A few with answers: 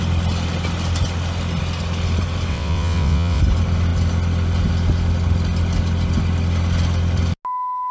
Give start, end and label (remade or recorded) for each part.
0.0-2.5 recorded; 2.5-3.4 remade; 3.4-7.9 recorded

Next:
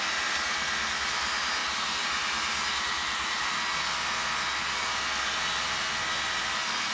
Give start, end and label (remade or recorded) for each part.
0.0-6.9 recorded

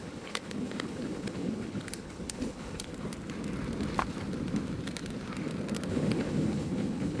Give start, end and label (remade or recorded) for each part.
0.0-2.9 remade; 2.9-5.9 recorded; 5.9-7.2 remade

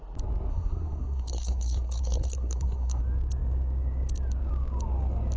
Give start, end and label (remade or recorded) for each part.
0.0-0.5 recorded; 0.5-3.0 remade; 3.0-5.4 recorded

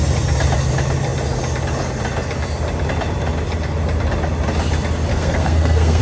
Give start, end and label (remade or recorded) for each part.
0.0-5.1 recorded; 5.1-6.0 remade

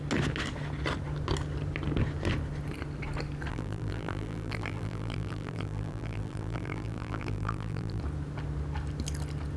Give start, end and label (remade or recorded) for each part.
0.0-3.5 recorded; 3.5-8.0 remade; 8.0-9.6 recorded

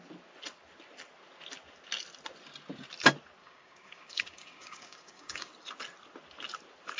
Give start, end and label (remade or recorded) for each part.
0.0-3.4 recorded; 3.4-5.5 remade; 5.5-7.0 recorded

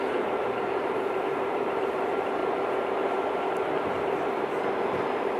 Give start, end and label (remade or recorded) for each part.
0.0-2.4 remade; 2.4-3.9 recorded; 3.9-5.4 remade